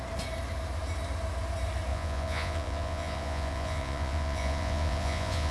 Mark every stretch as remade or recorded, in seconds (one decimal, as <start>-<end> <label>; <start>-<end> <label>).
0.0-1.9 recorded; 1.9-5.5 remade